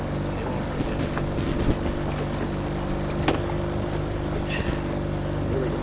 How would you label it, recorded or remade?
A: recorded